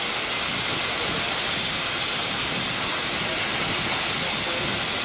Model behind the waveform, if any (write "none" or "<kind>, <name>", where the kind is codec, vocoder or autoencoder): none